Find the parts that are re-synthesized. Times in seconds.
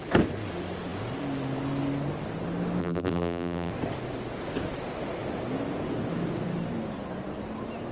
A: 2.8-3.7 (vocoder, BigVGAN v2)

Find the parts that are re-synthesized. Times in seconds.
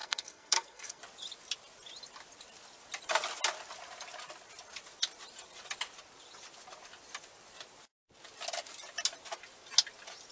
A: 0.0-1.0 (codec, SNAC)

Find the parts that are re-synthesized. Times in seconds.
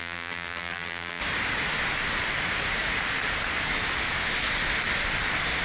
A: 0.0-1.2 (vocoder, BigVGAN v2)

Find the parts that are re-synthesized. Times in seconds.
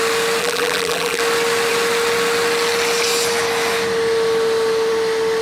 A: 0.4-1.2 (vocoder, BigVGAN v2)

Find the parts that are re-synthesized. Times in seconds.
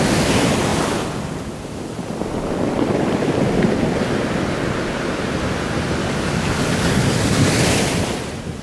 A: 6.0-7.5 (codec, DAC)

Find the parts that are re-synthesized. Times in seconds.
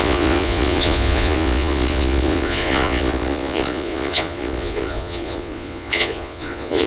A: 0.0-6.9 (vocoder, Vocos)